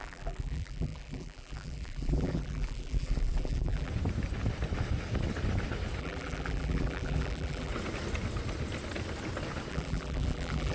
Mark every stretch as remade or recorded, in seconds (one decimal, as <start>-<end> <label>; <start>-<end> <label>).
0.0-3.9 remade; 3.9-6.0 recorded; 6.0-7.7 remade; 7.7-9.7 recorded; 9.7-10.7 remade

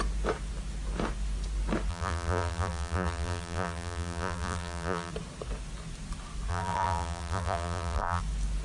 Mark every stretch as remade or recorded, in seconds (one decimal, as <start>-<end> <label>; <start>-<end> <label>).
0.0-1.9 recorded; 1.9-5.1 remade; 5.1-6.5 recorded; 6.5-8.2 remade; 8.2-8.6 recorded

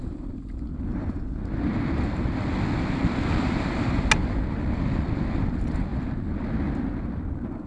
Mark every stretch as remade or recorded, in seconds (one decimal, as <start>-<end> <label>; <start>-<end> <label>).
0.0-0.9 recorded; 0.9-1.4 remade; 1.4-7.7 recorded